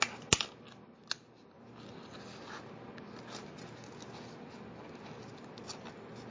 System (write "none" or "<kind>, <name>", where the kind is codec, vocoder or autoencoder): none